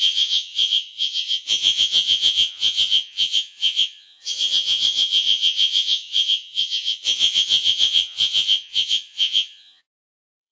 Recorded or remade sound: remade